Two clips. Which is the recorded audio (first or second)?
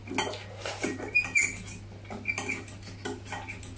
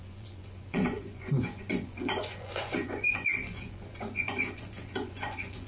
first